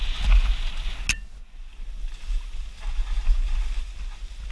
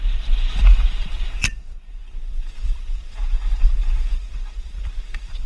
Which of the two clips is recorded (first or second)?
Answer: first